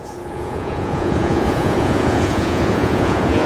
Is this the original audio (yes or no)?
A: no